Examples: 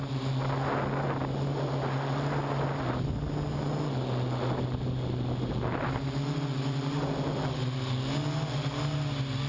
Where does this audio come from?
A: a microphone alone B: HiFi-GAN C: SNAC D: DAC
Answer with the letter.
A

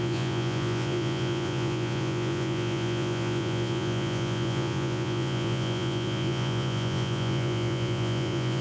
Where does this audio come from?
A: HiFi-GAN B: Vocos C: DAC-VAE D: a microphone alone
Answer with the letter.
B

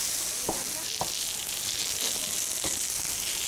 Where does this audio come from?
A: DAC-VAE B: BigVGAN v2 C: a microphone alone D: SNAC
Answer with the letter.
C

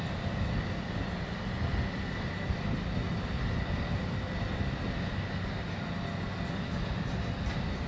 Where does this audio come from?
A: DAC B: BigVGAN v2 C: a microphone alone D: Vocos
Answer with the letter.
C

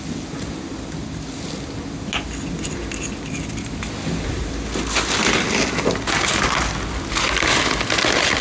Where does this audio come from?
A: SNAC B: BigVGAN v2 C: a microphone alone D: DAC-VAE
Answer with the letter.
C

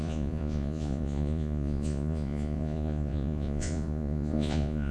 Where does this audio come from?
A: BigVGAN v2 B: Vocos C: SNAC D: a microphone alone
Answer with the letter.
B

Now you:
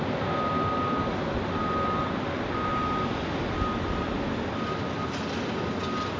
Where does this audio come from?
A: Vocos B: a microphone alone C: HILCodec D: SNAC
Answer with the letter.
B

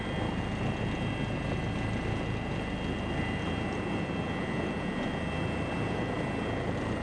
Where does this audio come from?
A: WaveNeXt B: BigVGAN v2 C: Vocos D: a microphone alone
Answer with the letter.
D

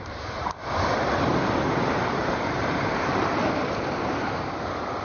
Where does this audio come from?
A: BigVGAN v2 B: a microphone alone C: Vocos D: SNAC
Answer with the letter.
A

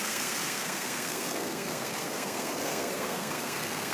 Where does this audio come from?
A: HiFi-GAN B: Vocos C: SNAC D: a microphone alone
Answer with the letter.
C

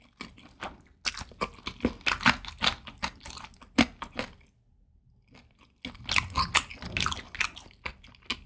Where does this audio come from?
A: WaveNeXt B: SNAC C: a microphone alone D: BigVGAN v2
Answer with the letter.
C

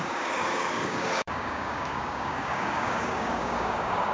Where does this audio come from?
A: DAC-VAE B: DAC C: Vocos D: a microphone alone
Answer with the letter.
B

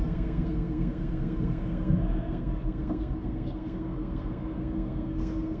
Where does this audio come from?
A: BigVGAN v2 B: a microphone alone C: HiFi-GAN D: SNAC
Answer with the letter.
D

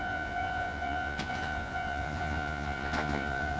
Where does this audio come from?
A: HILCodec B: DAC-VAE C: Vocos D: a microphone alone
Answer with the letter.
C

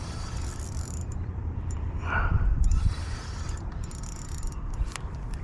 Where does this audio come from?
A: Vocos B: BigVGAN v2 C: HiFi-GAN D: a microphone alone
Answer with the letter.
B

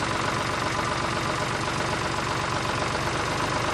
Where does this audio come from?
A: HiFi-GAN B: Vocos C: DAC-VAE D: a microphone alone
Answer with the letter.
D